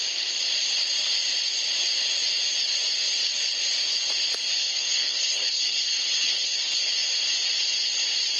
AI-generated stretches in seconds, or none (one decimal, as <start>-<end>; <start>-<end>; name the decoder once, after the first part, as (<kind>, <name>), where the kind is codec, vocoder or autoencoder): 4.6-6.9 (codec, HILCodec)